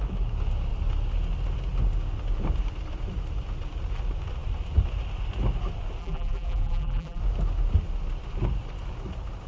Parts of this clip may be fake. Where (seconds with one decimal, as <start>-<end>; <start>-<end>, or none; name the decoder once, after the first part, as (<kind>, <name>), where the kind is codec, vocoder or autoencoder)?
6.0-7.2 (vocoder, BigVGAN v2)